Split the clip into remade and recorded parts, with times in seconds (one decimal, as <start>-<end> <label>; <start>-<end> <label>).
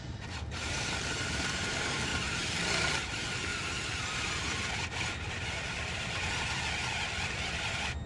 0.0-2.1 remade; 2.1-3.1 recorded; 3.1-3.5 remade; 3.5-4.3 recorded; 4.3-8.1 remade